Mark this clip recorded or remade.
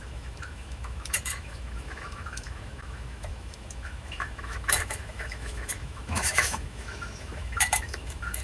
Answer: remade